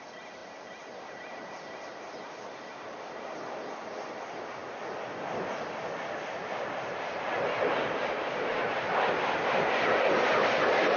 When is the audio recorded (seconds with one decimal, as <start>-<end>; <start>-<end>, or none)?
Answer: 0.0-11.0